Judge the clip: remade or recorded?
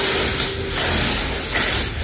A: recorded